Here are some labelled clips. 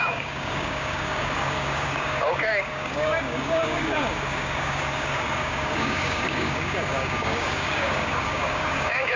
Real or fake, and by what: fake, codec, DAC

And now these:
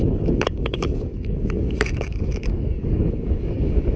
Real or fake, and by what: fake, codec, DAC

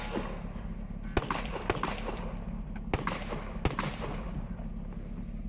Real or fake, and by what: real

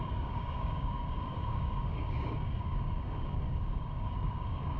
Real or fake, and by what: fake, codec, DAC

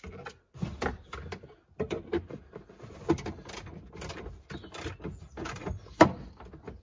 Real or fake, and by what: real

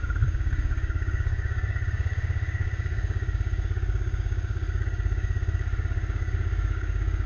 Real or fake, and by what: fake, codec, DAC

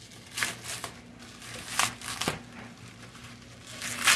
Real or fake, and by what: real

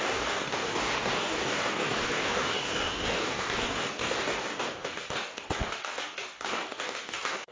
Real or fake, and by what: fake, codec, DAC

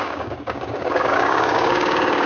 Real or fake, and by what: fake, codec, DAC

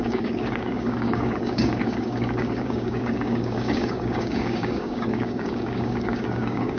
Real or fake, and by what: fake, codec, DAC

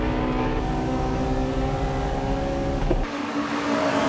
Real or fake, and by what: fake, codec, DAC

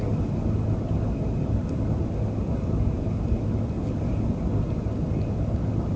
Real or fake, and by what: real